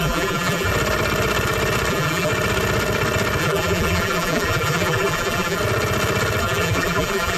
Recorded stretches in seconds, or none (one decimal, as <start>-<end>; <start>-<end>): 0.7-1.9; 2.3-3.4; 5.6-6.4